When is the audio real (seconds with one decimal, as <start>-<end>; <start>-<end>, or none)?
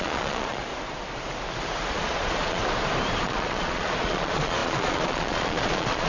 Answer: 0.7-1.9; 2.6-3.2